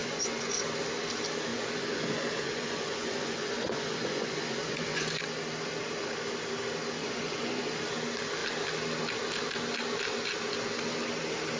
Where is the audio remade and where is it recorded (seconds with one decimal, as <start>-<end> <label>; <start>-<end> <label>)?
0.0-0.6 remade; 0.6-1.5 recorded; 1.5-5.2 remade; 5.2-7.0 recorded; 7.0-7.7 remade; 7.7-11.6 recorded